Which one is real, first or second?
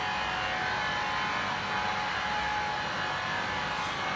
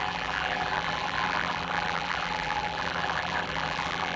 first